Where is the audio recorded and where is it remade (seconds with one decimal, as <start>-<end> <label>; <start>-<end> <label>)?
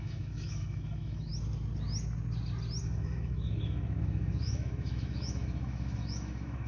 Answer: 0.0-1.3 remade; 1.3-2.8 recorded; 2.8-6.7 remade